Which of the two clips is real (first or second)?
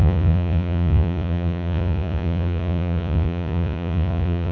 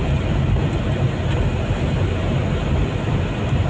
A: second